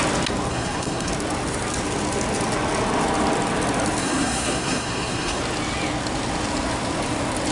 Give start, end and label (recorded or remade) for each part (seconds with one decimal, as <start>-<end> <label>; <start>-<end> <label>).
0.0-0.5 recorded; 0.5-1.1 remade; 1.1-4.0 recorded; 4.0-5.4 remade; 5.4-7.5 recorded